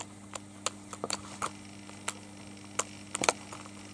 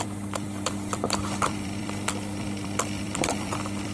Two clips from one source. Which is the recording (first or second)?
first